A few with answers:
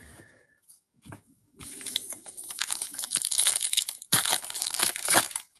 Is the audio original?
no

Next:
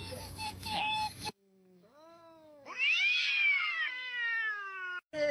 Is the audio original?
no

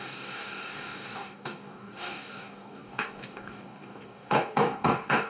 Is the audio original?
no